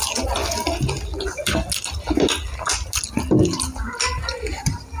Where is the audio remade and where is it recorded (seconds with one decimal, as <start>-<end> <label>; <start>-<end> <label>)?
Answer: 0.0-5.0 recorded